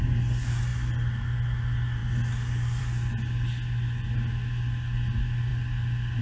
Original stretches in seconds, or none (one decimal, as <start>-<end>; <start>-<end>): 0.0-6.2